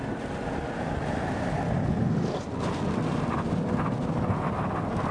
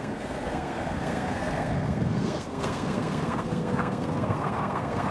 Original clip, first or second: first